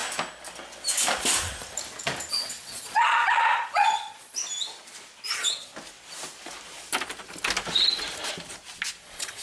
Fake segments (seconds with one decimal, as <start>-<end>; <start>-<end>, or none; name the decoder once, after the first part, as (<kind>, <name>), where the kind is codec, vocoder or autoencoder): 2.3-4.4 (vocoder, Vocos); 5.3-5.7; 9.0-9.4